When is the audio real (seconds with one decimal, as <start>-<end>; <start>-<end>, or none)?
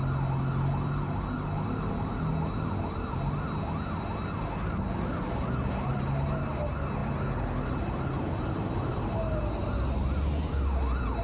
0.0-11.2